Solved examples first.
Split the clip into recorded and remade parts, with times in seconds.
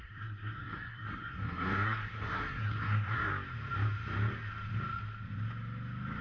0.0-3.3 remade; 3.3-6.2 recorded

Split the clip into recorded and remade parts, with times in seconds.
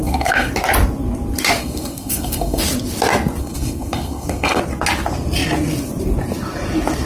0.0-0.5 remade; 0.5-1.6 recorded; 1.6-2.6 remade; 2.6-3.4 recorded; 3.4-4.6 remade; 4.6-7.1 recorded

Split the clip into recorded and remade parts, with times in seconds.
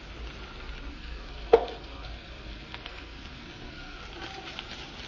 0.0-0.9 recorded; 0.9-4.0 remade; 4.0-5.1 recorded